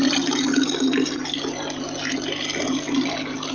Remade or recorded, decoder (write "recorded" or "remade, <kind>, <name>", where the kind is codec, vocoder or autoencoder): recorded